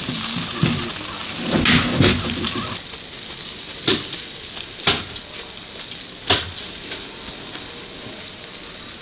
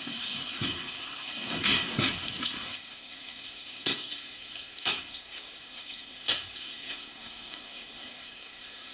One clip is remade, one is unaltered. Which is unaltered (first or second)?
first